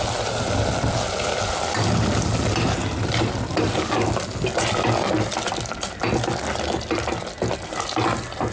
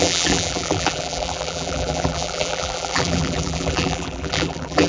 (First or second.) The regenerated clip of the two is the second